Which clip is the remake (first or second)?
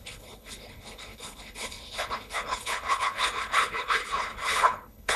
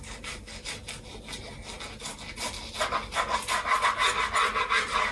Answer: first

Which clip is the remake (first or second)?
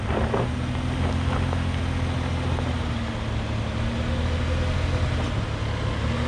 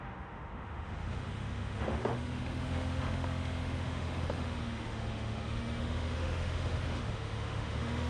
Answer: second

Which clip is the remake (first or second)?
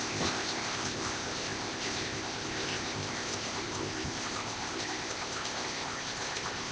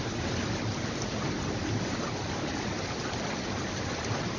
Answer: first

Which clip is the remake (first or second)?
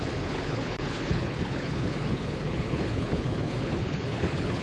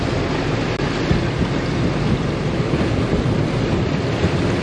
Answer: first